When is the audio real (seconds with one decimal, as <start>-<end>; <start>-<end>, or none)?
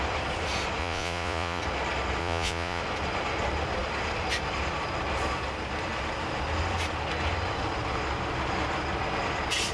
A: 0.0-0.8; 1.6-2.2; 2.8-9.7